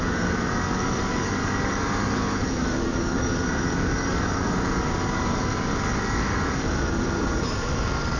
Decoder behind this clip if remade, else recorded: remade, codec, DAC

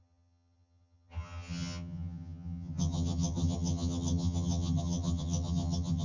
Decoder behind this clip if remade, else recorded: remade, vocoder, HiFi-GAN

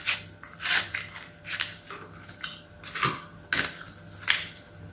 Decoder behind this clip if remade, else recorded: recorded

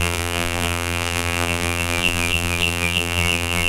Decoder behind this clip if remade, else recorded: remade, vocoder, BigVGAN v2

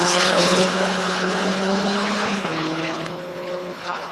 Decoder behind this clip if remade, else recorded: remade, codec, HILCodec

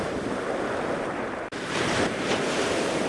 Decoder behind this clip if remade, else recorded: recorded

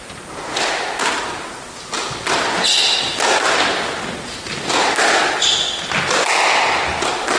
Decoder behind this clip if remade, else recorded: recorded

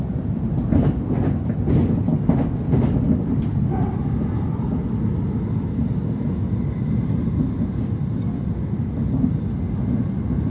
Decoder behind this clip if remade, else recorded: recorded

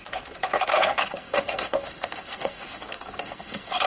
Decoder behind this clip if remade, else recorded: remade, codec, SNAC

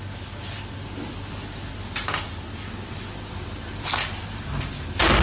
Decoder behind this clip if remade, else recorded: recorded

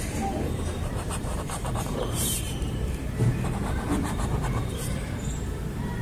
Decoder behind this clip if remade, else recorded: remade, vocoder, BigVGAN v2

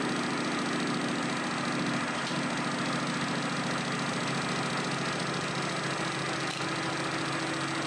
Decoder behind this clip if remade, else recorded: recorded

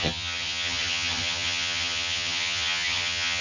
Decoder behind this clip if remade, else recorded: remade, vocoder, HiFi-GAN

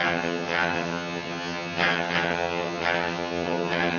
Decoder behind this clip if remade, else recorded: remade, vocoder, HiFi-GAN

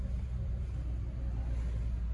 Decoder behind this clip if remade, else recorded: recorded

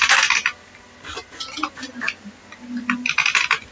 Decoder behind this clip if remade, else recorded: recorded